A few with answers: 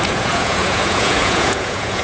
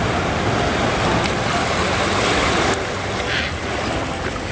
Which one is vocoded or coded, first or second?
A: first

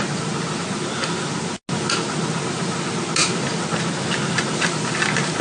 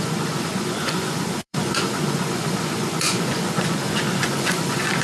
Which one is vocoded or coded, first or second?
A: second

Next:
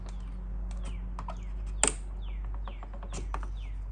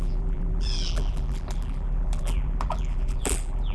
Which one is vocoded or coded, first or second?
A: second